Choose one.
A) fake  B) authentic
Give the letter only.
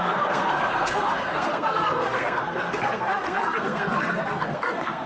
A